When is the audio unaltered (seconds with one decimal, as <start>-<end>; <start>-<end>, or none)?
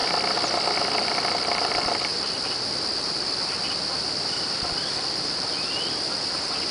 0.0-0.8